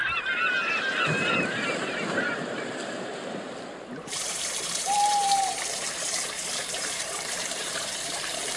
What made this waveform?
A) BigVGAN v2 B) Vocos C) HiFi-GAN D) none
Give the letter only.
A